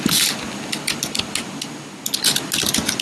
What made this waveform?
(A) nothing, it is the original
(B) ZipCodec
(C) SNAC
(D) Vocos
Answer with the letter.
A